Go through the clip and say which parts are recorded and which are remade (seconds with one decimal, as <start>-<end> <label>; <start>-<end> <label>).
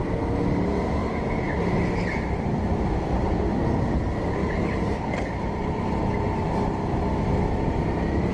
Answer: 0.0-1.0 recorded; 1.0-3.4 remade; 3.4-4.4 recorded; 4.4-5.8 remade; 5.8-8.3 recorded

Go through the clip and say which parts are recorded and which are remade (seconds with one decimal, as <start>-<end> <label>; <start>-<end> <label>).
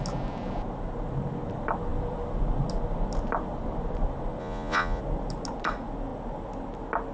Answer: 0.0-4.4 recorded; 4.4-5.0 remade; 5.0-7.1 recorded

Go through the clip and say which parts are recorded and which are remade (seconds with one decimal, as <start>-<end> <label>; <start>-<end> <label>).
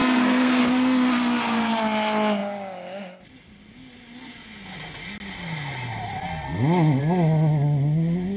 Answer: 0.0-0.6 remade; 0.6-8.4 recorded